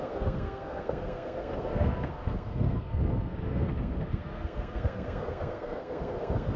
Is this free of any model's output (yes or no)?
no